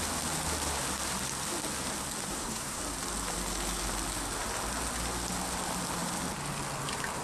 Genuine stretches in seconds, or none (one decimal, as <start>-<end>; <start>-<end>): 0.0-2.3; 2.8-7.2